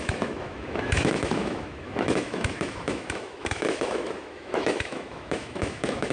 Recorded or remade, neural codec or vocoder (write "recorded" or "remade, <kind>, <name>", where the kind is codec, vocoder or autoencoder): remade, autoencoder, DAC-VAE